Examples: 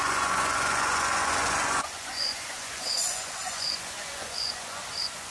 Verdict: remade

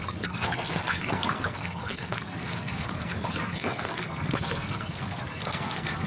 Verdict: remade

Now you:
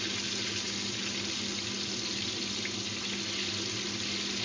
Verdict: recorded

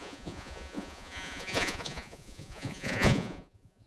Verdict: remade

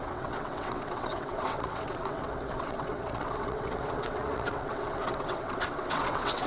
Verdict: remade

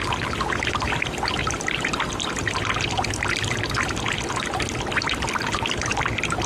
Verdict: recorded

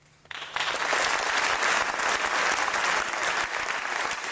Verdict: recorded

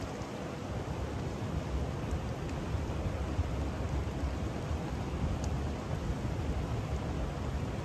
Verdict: recorded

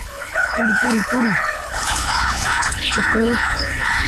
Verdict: remade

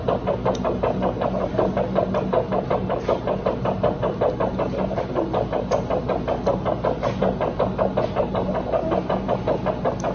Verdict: recorded